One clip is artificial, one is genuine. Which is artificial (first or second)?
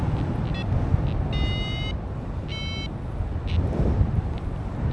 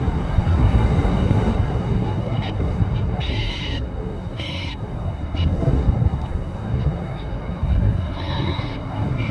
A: second